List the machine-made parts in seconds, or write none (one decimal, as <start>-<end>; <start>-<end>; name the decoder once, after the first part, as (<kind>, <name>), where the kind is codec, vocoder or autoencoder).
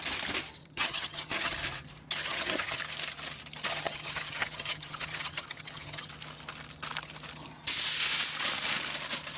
0.6-1.5 (vocoder, HiFi-GAN); 2.2-2.8; 3.7-6.1